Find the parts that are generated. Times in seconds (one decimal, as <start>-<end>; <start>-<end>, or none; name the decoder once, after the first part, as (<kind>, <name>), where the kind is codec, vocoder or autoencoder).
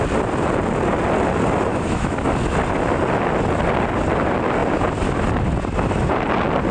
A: 1.7-2.3 (autoencoder, DAC-VAE)